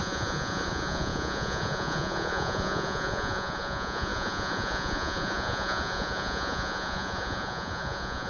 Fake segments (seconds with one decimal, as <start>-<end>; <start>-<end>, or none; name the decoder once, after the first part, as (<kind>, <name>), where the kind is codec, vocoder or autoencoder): 0.0-8.3 (vocoder, Vocos)